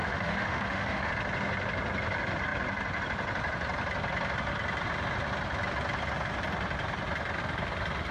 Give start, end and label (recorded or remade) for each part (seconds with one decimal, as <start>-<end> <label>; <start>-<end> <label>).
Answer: 0.0-1.1 remade; 1.1-8.1 recorded